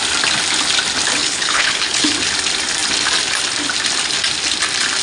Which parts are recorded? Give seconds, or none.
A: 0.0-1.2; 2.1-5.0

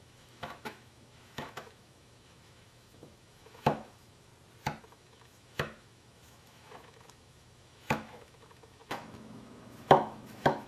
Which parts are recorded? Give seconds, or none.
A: 4.3-4.8

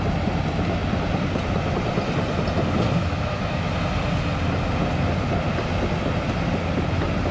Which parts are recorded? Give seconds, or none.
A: 0.0-3.0; 3.7-7.3